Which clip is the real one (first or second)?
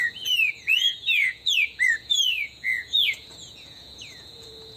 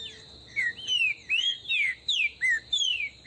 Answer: second